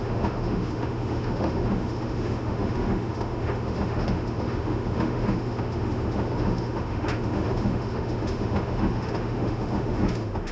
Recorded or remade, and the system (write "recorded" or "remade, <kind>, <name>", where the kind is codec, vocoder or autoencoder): remade, autoencoder, DAC-VAE